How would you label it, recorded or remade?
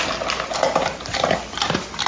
recorded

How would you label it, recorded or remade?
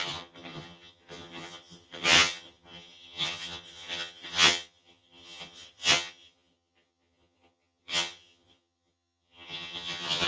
remade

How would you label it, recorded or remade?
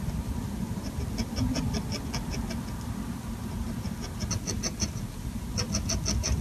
recorded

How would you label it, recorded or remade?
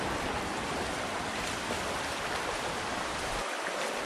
remade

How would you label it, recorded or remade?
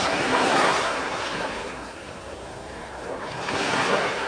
remade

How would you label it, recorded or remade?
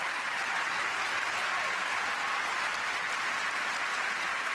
recorded